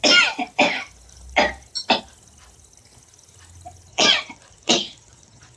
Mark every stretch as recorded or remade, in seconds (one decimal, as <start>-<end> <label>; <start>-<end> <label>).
0.0-3.9 recorded; 3.9-5.6 remade